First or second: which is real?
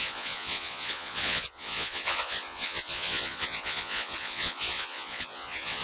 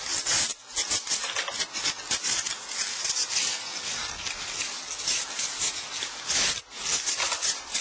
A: second